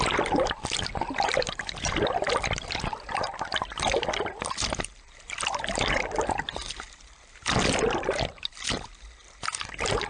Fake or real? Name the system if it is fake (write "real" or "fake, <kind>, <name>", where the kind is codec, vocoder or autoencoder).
real